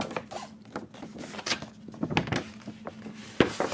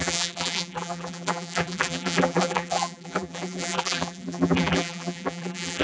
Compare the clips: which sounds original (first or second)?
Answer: first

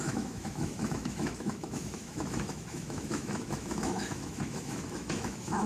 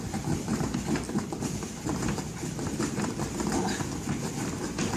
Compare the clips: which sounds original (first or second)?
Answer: second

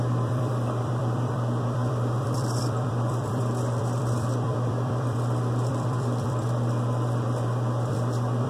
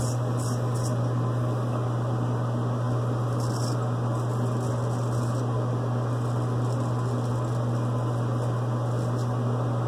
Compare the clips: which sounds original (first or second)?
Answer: second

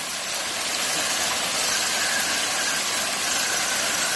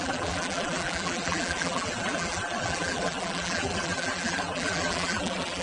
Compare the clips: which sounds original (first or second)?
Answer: first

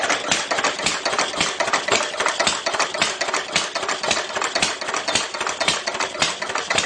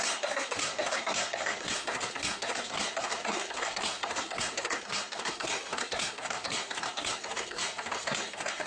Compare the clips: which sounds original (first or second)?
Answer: first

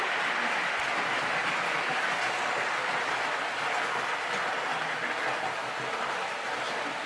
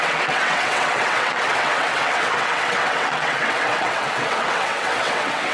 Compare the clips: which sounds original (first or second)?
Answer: first